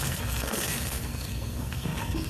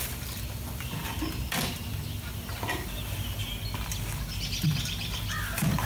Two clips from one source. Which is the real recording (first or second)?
second